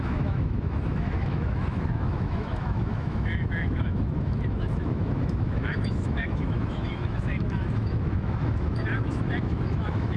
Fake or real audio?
fake